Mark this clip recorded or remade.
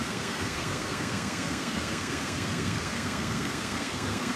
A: remade